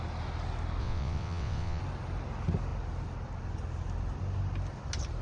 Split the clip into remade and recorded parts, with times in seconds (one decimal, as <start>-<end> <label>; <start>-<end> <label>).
0.0-0.8 recorded; 0.8-1.8 remade; 1.8-5.2 recorded